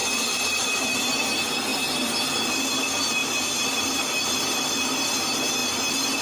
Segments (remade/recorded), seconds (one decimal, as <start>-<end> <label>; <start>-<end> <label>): 0.0-0.8 remade; 0.8-6.2 recorded